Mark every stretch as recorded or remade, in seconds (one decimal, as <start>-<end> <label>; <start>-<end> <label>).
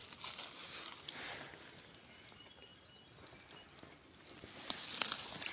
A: 0.0-5.5 recorded